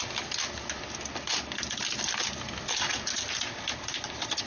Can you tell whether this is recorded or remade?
recorded